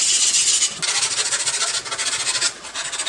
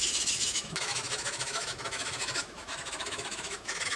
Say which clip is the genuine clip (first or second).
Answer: first